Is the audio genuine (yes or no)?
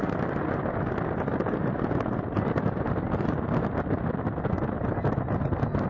yes